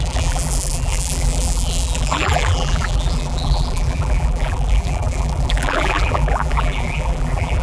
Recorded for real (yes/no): no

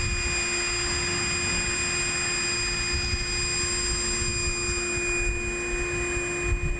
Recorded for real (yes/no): yes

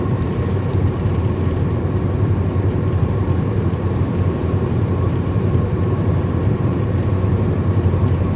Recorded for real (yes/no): no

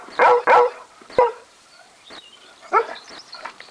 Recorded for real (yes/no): no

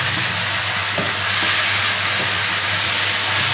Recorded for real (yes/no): yes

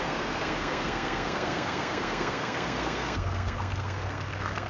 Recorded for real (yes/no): no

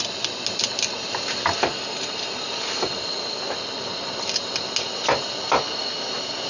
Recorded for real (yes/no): yes